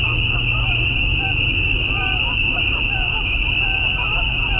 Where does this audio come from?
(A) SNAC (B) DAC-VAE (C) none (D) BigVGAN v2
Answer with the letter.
C